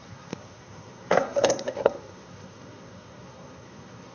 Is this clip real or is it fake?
fake